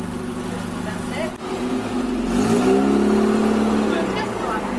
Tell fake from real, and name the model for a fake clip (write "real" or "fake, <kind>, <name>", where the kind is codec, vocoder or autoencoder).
real